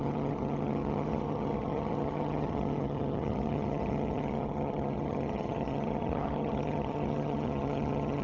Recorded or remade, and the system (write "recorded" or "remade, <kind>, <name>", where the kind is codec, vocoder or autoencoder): remade, vocoder, HiFi-GAN